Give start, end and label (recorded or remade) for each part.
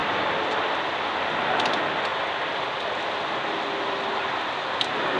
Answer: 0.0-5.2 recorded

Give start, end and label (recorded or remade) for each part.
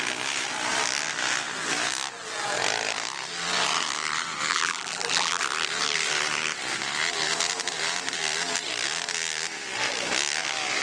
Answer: 0.0-4.5 recorded; 4.5-5.4 remade; 5.4-10.8 recorded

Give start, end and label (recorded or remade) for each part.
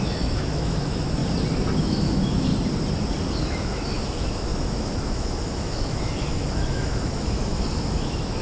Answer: 0.0-1.2 remade; 1.2-1.8 recorded; 1.8-2.5 remade; 2.5-3.4 recorded; 3.4-8.4 remade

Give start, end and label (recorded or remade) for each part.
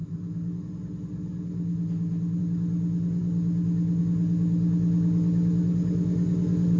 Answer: 0.0-6.8 recorded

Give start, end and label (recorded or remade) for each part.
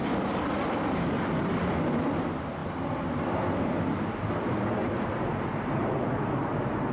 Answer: 0.0-1.5 remade; 1.5-2.6 recorded; 2.6-3.2 remade; 3.2-4.8 recorded; 4.8-5.7 remade; 5.7-6.9 recorded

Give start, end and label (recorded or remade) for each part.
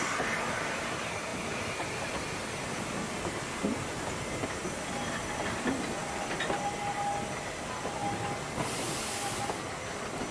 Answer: 0.0-1.3 recorded; 1.3-4.3 remade; 4.3-10.3 recorded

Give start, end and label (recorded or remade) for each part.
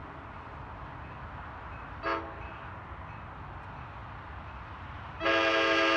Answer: 0.0-6.0 recorded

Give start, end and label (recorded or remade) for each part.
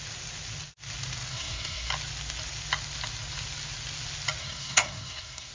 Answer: 0.0-1.3 recorded; 1.3-1.9 remade; 1.9-4.4 recorded; 4.4-5.5 remade